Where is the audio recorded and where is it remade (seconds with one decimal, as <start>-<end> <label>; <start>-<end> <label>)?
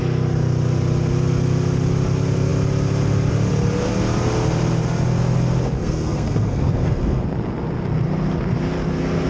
0.0-5.8 recorded; 5.8-7.2 remade; 7.2-9.3 recorded